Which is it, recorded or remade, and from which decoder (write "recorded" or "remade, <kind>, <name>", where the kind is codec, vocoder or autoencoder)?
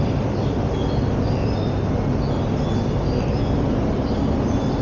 recorded